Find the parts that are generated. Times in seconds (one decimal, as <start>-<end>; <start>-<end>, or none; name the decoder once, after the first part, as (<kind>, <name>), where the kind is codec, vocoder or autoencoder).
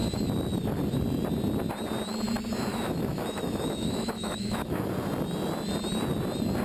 2.7-4.9 (autoencoder, DAC-VAE)